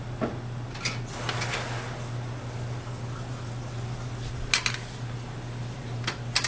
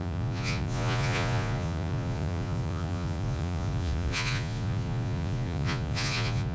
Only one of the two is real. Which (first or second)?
first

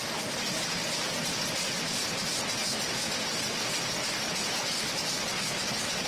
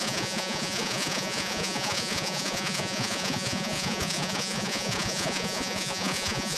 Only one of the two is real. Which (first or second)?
first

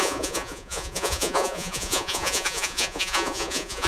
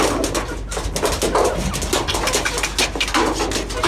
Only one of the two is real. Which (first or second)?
second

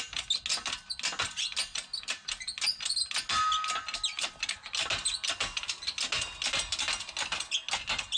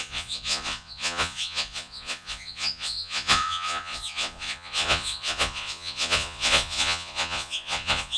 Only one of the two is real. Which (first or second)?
first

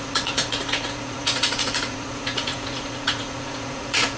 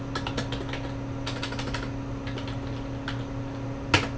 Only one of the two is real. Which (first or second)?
second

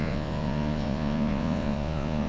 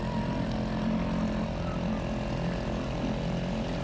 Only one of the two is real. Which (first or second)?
second